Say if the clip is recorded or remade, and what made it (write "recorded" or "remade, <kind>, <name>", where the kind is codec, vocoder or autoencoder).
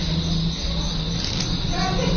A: recorded